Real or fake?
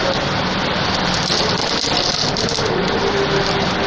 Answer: real